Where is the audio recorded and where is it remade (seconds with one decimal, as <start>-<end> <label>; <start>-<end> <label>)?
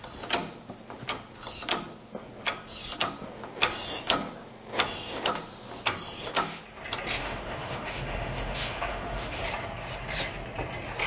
0.0-7.2 recorded; 7.2-9.4 remade; 9.4-11.1 recorded